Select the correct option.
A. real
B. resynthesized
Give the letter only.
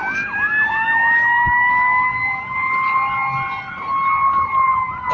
A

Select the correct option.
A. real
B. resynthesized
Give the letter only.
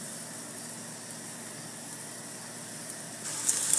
A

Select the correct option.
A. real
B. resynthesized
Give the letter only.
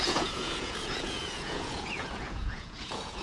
B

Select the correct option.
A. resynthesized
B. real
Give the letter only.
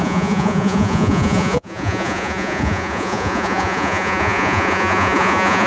A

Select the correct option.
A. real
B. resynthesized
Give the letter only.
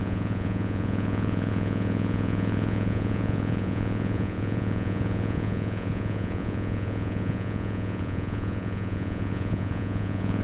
B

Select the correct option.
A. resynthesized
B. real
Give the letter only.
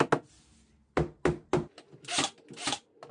B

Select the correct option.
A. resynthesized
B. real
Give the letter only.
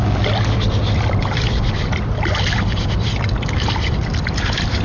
B